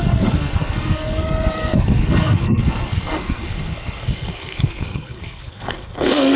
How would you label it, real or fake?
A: fake